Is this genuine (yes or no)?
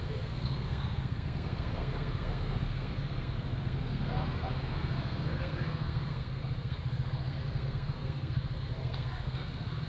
no